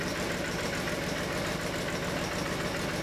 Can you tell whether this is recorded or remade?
recorded